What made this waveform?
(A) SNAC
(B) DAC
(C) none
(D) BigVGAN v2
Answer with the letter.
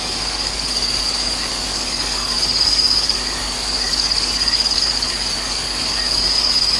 B